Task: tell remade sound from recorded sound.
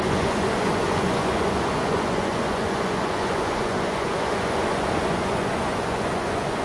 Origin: remade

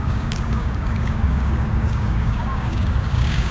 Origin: remade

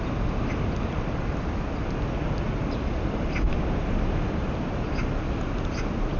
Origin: recorded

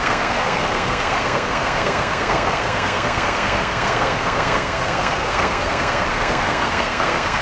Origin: remade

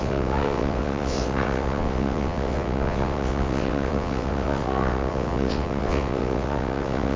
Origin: remade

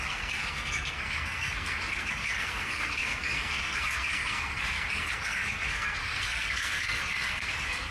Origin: remade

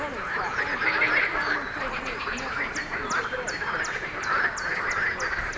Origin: recorded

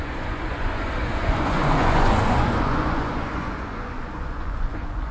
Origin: remade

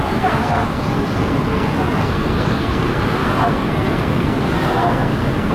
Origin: remade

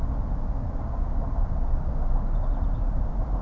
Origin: recorded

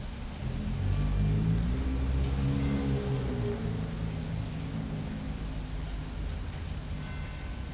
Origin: recorded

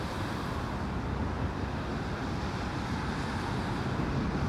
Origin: recorded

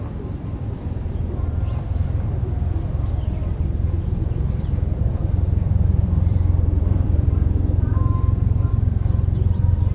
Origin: remade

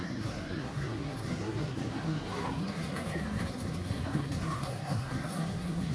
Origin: remade